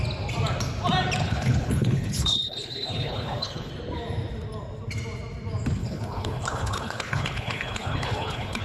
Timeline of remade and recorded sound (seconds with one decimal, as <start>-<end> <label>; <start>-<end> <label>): 0.0-1.2 recorded; 1.2-3.7 remade; 3.7-5.8 recorded; 5.8-8.6 remade